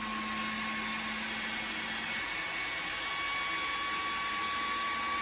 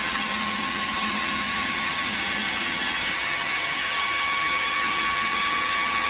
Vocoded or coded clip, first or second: second